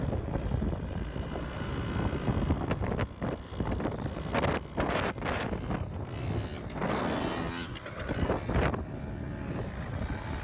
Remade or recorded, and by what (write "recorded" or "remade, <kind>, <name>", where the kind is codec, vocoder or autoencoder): recorded